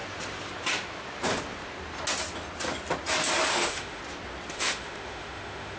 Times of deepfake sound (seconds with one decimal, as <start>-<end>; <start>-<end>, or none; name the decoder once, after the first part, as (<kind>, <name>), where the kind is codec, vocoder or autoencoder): 3.5-4.0 (autoencoder, DAC-VAE); 4.5-5.8